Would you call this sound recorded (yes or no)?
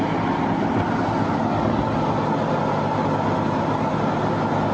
yes